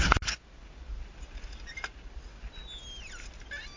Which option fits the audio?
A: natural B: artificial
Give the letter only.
A